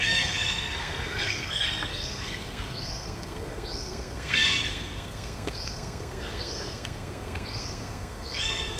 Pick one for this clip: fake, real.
fake